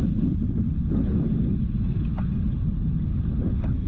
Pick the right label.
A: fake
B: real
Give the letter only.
B